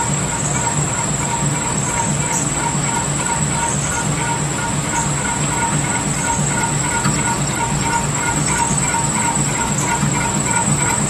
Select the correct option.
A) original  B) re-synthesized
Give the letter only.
A